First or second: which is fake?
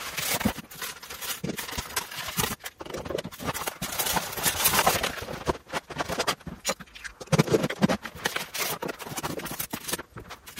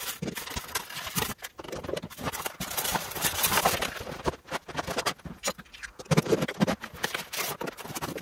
second